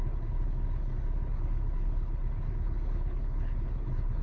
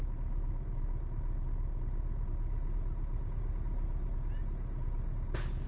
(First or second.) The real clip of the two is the second